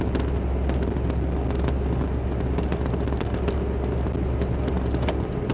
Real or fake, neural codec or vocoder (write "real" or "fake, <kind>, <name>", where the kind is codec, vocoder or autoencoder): real